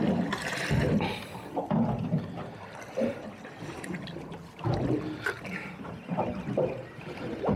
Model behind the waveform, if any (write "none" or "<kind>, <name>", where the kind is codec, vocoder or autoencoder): none